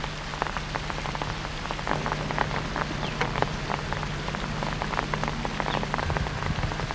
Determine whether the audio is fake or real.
real